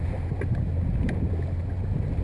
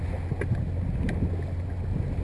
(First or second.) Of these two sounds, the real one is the second